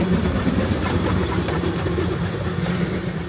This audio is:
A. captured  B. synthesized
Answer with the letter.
B